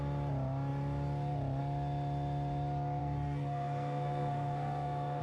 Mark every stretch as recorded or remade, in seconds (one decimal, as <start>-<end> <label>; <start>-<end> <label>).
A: 0.0-3.0 recorded; 3.0-5.2 remade